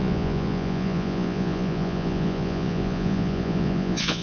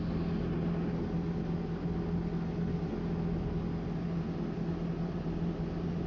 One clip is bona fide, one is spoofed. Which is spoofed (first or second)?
first